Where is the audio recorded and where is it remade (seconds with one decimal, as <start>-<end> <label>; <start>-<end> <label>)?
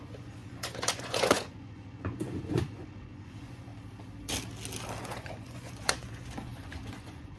0.0-3.7 remade; 3.7-5.0 recorded; 5.0-7.4 remade